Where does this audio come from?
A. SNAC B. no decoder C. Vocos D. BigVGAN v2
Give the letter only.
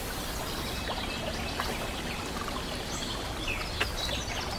B